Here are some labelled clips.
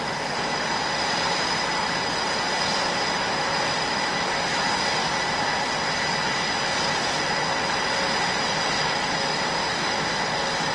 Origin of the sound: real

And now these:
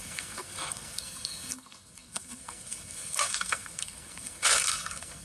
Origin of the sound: fake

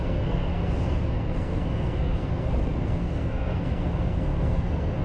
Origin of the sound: fake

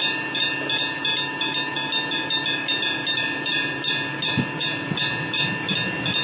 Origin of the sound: real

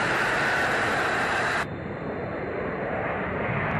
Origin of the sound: real